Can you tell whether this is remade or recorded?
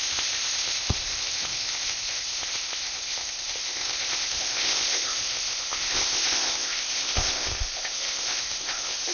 remade